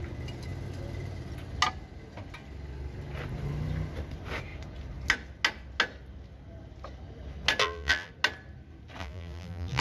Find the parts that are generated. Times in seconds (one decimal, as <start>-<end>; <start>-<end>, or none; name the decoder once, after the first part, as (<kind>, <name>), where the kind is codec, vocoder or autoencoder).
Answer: 7.6-8.1 (vocoder, BigVGAN v2); 9.0-9.8